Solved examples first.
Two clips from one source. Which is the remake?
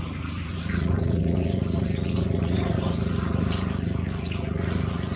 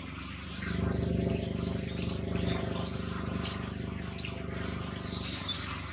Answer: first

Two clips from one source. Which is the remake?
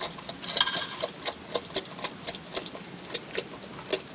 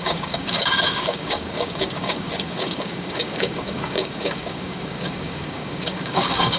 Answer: second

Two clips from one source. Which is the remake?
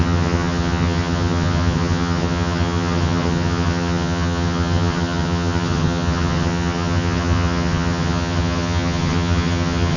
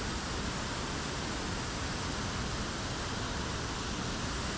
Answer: first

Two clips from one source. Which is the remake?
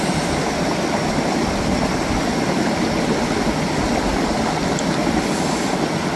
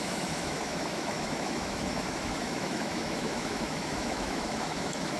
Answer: second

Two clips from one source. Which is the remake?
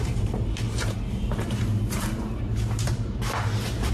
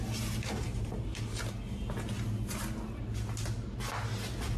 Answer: first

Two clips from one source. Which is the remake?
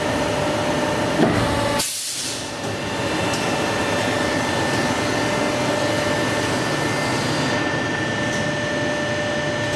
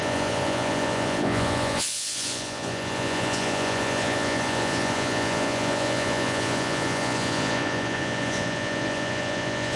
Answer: second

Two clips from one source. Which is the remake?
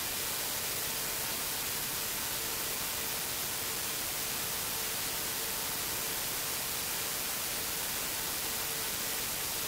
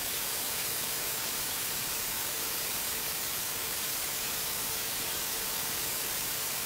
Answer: second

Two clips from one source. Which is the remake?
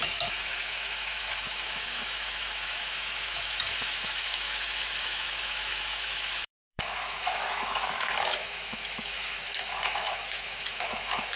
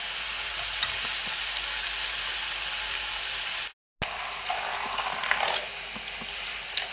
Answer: first